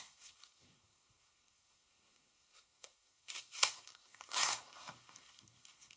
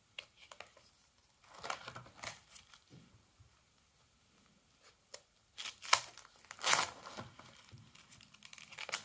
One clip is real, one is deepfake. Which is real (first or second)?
second